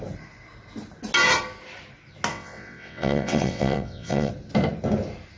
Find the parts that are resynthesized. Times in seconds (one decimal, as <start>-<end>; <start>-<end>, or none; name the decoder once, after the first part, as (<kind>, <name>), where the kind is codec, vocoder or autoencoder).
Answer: 2.3-4.3 (vocoder, WaveNeXt)